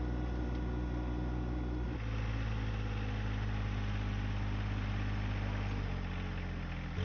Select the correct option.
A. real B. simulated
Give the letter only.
A